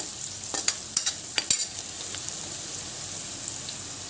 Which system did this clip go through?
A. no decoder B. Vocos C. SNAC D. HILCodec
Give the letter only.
A